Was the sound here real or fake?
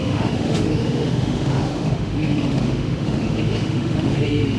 fake